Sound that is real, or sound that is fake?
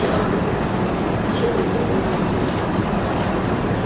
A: fake